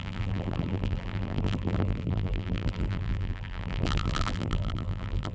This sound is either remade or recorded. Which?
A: remade